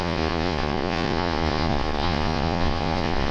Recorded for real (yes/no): no